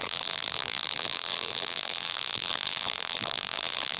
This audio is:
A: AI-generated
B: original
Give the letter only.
A